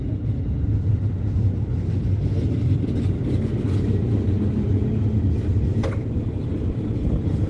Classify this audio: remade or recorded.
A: recorded